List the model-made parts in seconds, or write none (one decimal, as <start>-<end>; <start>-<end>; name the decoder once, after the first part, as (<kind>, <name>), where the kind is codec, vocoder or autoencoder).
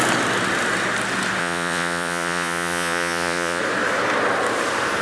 1.4-3.6 (vocoder, Vocos)